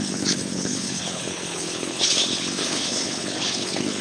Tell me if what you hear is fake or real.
fake